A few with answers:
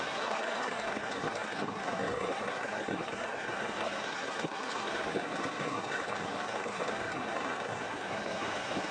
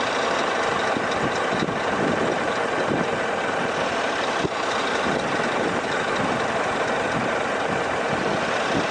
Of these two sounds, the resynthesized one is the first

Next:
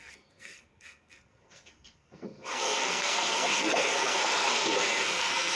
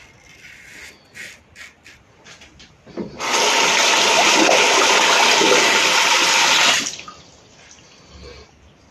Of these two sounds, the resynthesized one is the first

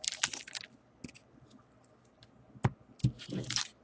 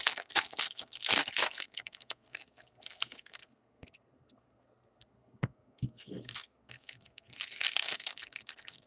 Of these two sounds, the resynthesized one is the second